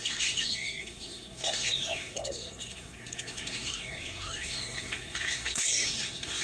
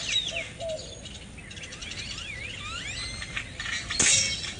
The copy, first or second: first